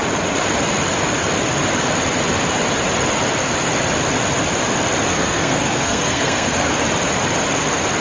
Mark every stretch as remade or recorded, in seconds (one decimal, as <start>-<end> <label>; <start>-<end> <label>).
0.0-5.1 recorded; 5.1-6.7 remade; 6.7-8.0 recorded